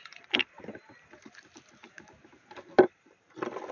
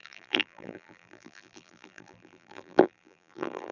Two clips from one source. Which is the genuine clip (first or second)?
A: first